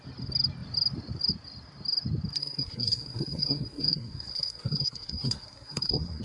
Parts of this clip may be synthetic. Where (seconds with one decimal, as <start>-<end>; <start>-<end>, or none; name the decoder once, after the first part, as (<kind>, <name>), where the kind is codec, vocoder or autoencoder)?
2.4-6.2 (codec, SNAC)